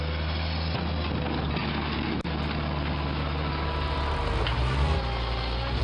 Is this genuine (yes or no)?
yes